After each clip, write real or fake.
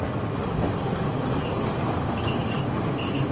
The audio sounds real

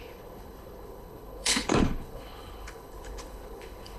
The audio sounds fake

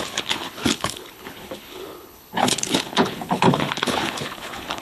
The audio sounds fake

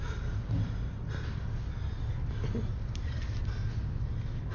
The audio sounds real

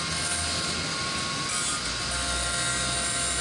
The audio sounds real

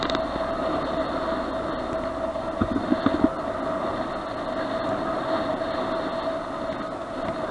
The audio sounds real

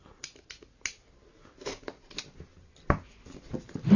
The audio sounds real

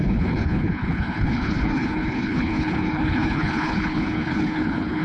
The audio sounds fake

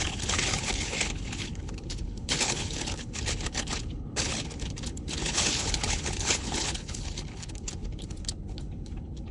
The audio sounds fake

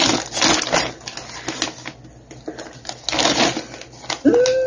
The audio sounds real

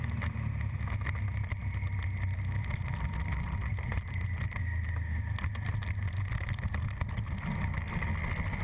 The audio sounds real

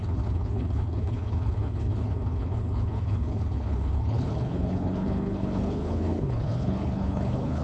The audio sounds fake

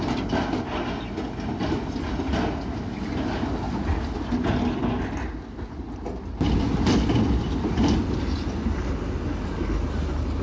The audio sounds real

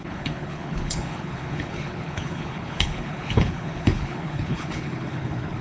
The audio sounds fake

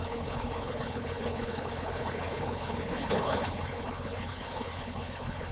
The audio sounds fake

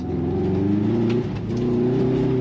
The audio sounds real